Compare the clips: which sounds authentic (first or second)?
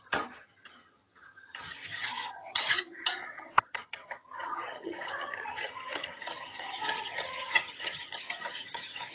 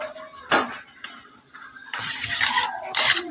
second